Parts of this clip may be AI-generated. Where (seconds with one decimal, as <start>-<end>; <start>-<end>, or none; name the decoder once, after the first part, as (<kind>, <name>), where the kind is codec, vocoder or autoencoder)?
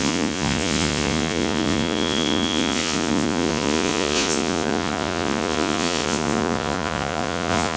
0.0-7.8 (vocoder, Vocos)